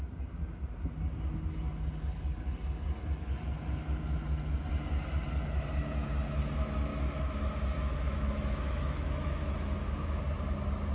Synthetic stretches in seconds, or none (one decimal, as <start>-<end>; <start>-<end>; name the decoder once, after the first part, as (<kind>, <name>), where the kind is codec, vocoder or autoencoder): 6.9-10.2 (autoencoder, DAC-VAE)